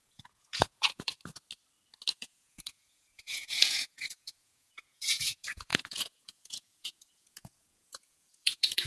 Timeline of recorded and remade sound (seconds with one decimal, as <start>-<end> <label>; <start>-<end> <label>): 0.0-1.1 remade; 1.1-2.1 recorded; 2.1-8.9 remade